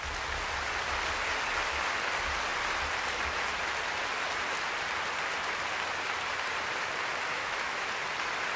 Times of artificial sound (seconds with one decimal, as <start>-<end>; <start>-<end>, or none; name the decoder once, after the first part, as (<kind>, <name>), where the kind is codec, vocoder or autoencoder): 7.3-7.9 (autoencoder, DAC-VAE)